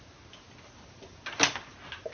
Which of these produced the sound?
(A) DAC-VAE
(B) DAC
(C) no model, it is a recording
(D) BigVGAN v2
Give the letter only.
C